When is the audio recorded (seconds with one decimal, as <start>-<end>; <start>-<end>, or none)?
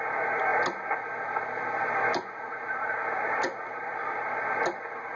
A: 0.0-5.2